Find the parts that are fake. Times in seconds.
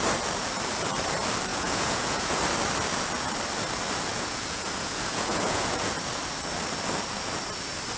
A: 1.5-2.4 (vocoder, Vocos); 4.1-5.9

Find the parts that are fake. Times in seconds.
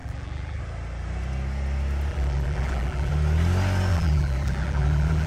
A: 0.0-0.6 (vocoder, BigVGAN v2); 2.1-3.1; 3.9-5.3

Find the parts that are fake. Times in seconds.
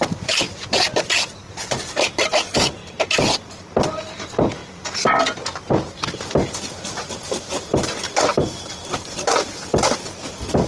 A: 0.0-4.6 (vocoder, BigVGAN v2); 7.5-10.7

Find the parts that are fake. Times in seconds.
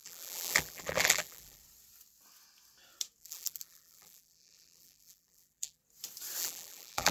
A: 0.0-1.6 (vocoder, BigVGAN v2); 3.2-5.8; 6.4-7.1